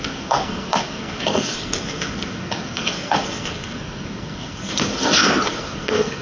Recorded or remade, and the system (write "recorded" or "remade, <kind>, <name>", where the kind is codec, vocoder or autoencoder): remade, codec, SNAC